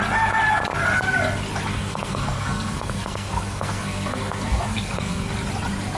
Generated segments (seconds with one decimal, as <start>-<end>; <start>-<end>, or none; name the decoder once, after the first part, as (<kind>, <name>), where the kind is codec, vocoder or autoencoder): 1.7-5.3 (codec, SNAC)